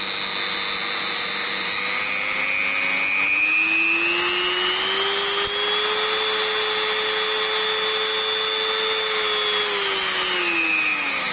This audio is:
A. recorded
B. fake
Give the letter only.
A